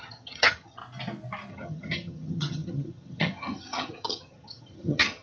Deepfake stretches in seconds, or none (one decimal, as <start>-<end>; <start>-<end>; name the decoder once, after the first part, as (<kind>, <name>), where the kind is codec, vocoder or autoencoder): 0.0-0.8 (vocoder, HiFi-GAN); 1.5-5.2